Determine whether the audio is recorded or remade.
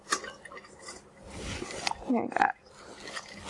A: recorded